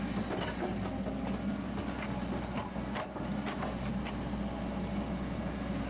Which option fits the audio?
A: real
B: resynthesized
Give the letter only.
A